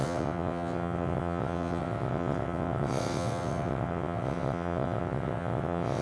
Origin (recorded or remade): remade